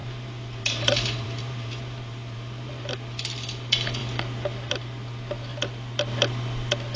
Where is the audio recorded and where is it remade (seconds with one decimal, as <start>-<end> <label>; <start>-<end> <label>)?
0.0-2.9 remade; 2.9-7.0 recorded